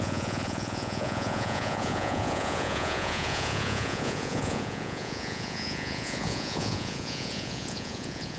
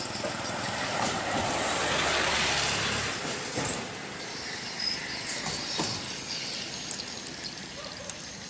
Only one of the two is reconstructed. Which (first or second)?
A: first